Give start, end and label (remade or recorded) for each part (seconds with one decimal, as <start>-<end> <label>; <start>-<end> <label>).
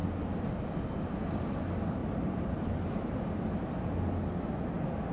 0.0-2.0 recorded; 2.0-3.7 remade; 3.7-5.1 recorded